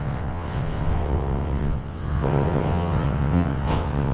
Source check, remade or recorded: remade